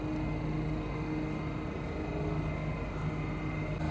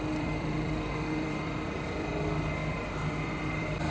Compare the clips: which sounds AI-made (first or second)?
second